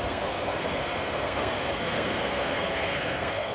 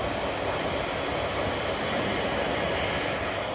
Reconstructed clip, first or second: first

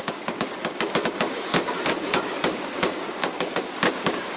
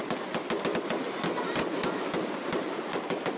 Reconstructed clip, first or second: first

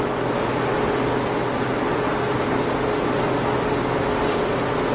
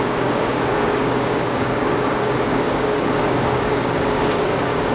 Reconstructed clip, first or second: second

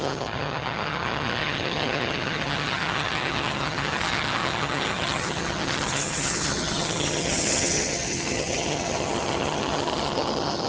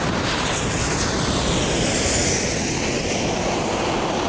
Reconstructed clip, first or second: first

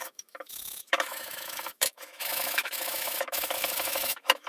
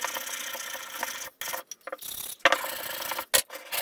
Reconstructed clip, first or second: first